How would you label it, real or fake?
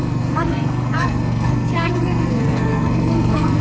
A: fake